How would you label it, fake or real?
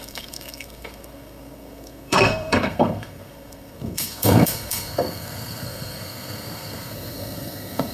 fake